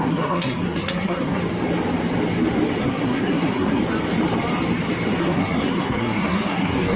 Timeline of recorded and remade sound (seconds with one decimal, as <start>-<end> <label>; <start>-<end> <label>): 0.0-1.4 remade; 1.4-2.8 recorded; 2.8-3.8 remade; 3.8-5.2 recorded; 5.2-7.0 remade